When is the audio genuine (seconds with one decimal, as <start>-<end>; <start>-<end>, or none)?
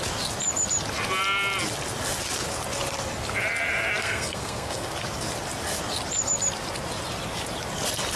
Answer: 0.0-4.0; 4.9-8.2